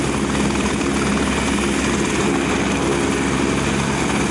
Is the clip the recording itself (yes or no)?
yes